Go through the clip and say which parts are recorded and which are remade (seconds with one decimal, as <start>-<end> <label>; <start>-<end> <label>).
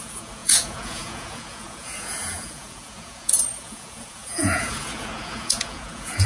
0.0-6.3 remade